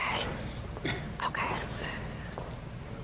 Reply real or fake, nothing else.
real